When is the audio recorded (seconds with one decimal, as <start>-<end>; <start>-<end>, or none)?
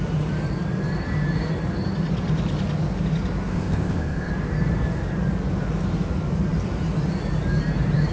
0.0-3.5; 4.3-8.1